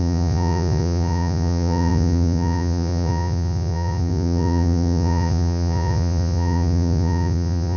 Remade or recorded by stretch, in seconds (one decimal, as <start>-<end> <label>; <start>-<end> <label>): 0.0-7.8 remade